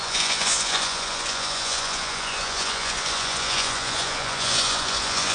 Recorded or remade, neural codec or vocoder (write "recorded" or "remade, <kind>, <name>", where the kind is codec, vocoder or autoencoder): remade, vocoder, Vocos